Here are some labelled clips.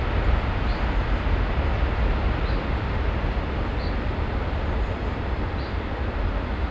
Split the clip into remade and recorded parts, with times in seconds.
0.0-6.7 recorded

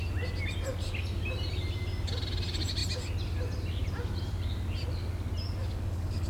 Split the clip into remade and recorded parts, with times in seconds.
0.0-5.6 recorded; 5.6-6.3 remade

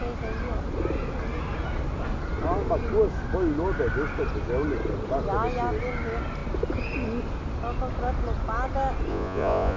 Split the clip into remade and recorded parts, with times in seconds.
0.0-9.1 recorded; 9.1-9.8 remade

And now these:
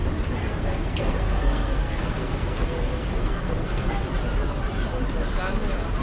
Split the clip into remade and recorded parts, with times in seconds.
0.0-0.4 recorded; 0.4-4.0 remade; 4.0-6.0 recorded

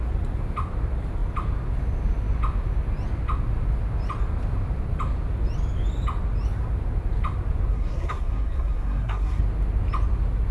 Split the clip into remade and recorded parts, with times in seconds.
0.0-7.7 recorded; 7.7-9.4 remade; 9.4-10.5 recorded

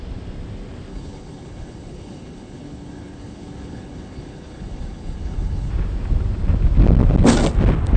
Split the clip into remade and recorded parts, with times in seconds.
0.0-0.9 recorded; 0.9-5.7 remade; 5.7-8.0 recorded

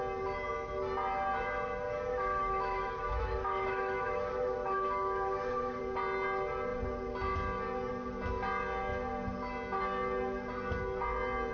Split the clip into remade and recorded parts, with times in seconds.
0.0-2.1 recorded; 2.1-5.8 remade; 5.8-11.5 recorded

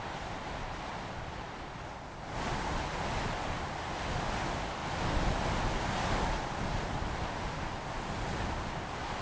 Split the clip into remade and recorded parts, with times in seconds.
0.0-9.2 recorded